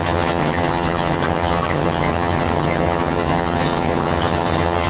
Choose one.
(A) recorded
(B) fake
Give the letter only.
B